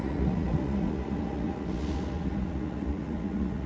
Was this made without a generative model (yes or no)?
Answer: no